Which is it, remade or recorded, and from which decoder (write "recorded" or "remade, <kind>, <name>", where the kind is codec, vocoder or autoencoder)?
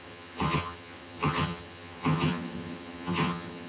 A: remade, vocoder, HiFi-GAN